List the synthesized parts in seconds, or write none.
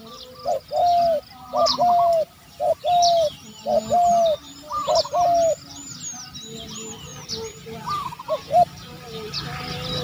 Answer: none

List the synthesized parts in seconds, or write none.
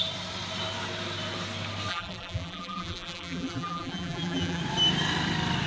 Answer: 1.9-4.6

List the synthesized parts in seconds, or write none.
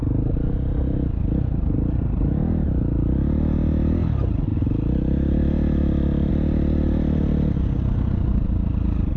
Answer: none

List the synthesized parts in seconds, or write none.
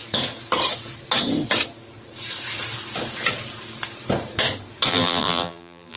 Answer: 4.9-6.0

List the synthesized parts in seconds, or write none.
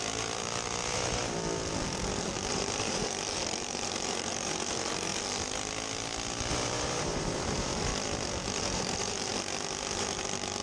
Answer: 0.0-1.2; 2.5-5.1; 6.5-7.9; 8.6-9.3; 10.0-10.6